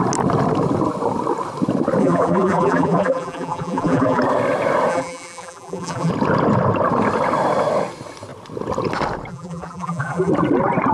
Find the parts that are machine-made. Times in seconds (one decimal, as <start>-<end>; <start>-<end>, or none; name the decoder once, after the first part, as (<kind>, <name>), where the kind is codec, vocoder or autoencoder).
2.0-4.2 (vocoder, BigVGAN v2); 4.9-6.1; 9.3-10.3